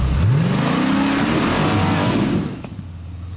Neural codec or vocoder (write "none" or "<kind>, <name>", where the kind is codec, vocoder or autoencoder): none